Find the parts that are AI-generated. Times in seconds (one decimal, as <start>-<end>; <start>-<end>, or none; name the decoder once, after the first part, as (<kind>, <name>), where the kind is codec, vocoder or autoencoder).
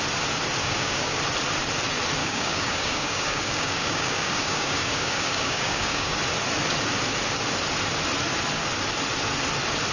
0.6-1.2 (codec, DAC); 2.2-6.2